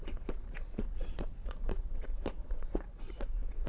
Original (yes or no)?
no